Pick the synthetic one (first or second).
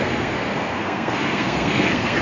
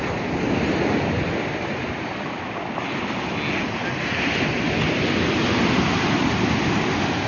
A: first